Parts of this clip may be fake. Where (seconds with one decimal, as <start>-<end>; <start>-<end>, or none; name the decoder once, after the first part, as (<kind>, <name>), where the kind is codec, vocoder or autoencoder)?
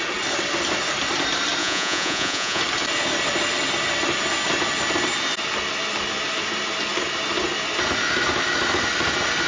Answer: 1.6-2.6 (vocoder, Vocos)